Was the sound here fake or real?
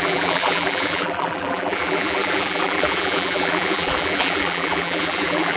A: fake